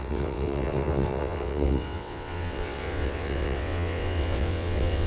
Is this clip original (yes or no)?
no